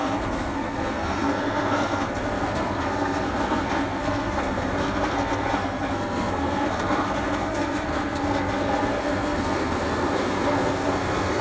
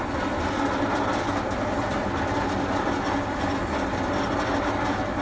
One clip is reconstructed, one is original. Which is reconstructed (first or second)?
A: first